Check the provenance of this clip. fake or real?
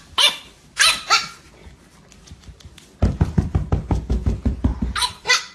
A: fake